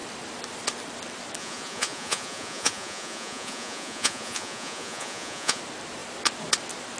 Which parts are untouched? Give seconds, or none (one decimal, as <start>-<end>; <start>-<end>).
0.0-1.4; 5.6-7.0